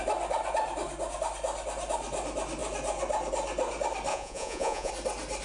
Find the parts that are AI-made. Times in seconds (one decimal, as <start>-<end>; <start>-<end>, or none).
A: 4.1-4.9